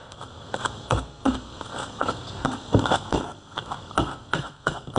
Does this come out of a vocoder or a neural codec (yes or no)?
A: yes